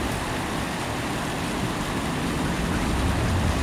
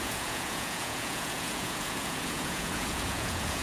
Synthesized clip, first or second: second